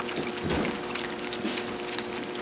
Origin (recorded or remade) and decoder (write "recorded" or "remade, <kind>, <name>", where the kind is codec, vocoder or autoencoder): recorded